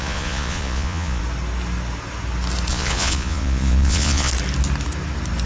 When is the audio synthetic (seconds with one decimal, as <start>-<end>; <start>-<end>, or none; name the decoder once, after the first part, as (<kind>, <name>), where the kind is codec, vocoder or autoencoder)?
0.0-1.2 (vocoder, Vocos); 2.7-4.3